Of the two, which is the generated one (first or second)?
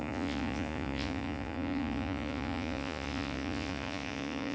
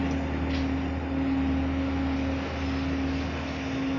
first